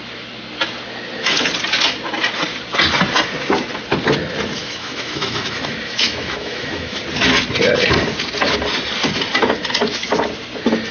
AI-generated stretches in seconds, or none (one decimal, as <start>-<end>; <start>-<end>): 4.6-7.0